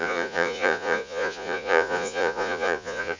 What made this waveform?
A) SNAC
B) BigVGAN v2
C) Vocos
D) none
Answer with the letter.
C